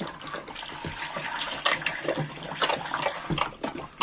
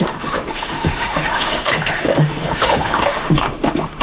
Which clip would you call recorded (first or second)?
first